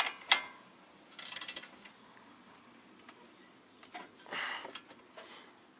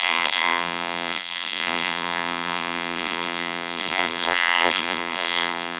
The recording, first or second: first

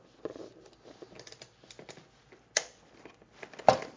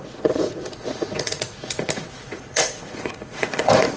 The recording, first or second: first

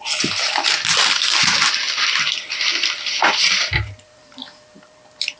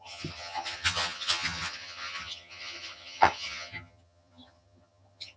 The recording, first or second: first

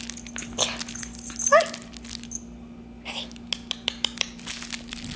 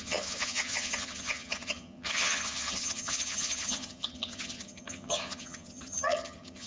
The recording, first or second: first